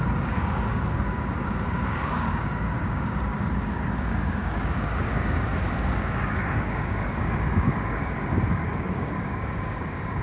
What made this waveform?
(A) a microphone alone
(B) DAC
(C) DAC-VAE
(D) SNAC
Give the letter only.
B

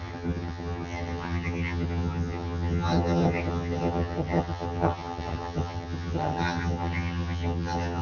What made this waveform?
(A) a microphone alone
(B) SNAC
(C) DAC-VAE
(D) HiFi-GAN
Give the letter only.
D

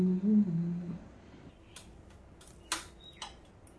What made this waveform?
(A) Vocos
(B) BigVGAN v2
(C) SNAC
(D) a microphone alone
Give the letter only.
D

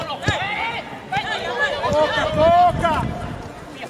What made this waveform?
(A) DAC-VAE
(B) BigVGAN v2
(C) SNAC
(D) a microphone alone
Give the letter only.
D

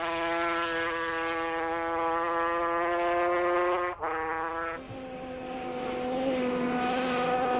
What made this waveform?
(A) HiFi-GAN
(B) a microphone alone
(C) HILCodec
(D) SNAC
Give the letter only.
B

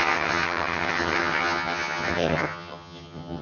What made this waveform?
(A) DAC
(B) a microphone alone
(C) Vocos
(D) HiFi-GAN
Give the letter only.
D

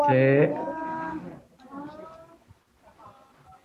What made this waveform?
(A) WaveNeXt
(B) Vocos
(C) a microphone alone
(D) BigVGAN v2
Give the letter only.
C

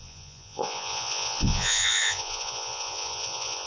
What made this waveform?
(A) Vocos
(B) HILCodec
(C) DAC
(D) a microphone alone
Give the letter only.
A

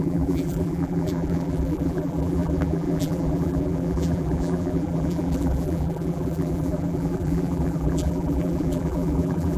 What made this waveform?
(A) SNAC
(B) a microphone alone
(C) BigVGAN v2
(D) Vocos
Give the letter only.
C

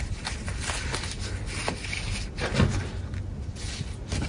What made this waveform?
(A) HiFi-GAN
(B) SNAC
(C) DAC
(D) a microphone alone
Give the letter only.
D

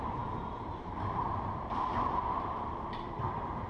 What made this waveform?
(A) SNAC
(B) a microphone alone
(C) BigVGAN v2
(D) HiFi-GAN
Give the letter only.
C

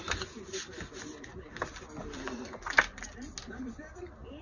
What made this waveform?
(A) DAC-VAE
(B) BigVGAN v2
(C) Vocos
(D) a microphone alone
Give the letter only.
D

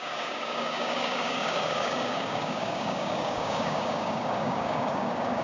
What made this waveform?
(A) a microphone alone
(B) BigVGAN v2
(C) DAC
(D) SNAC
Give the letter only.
C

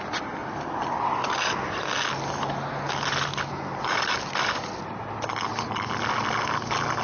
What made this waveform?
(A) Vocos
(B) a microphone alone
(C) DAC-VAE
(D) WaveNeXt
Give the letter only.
B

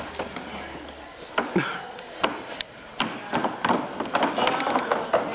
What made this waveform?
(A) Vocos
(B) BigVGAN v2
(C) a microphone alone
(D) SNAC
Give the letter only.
C